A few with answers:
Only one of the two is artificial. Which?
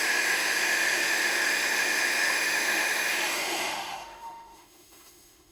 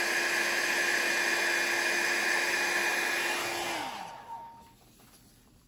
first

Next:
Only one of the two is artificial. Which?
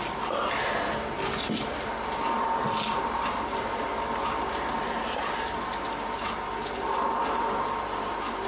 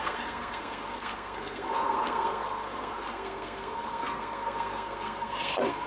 second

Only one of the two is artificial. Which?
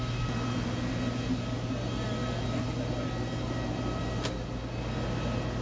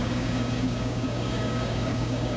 second